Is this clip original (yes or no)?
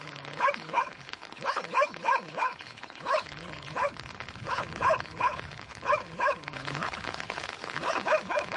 no